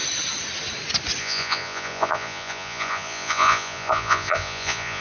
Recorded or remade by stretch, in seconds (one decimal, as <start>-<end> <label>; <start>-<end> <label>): 0.0-1.2 recorded; 1.2-5.0 remade